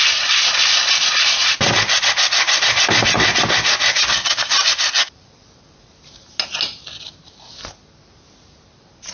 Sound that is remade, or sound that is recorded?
recorded